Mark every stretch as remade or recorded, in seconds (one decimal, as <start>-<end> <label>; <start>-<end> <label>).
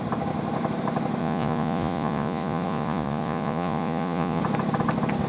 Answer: 0.0-1.2 recorded; 1.2-4.4 remade; 4.4-5.3 recorded